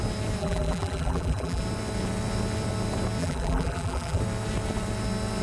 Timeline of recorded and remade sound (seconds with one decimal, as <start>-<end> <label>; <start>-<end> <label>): 0.0-0.4 recorded; 0.4-1.6 remade; 1.6-3.2 recorded; 3.2-4.2 remade; 4.2-5.4 recorded